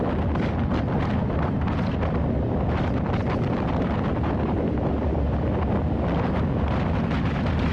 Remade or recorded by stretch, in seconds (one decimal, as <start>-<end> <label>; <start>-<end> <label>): 0.0-7.7 recorded